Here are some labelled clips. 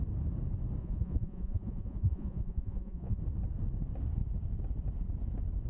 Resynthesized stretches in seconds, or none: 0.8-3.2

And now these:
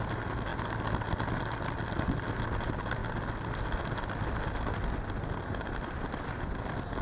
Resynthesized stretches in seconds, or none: none